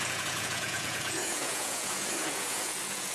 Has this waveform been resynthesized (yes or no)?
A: yes